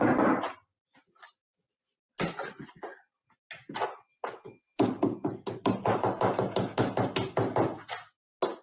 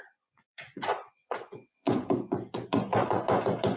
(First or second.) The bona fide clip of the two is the first